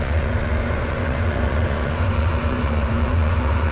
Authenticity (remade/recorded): remade